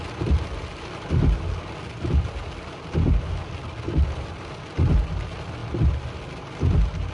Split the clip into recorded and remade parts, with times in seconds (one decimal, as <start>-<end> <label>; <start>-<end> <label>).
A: 0.0-7.1 recorded